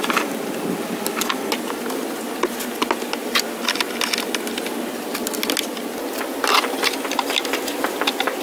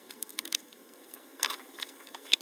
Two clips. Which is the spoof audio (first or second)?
second